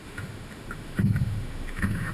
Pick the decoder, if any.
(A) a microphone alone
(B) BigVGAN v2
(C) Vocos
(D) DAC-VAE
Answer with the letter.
D